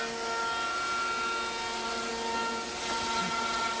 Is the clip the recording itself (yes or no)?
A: yes